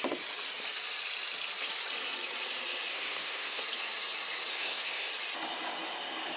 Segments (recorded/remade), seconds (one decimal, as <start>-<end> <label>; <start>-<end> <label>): 0.0-2.9 recorded; 2.9-3.6 remade; 3.6-4.5 recorded; 4.5-5.1 remade; 5.1-6.4 recorded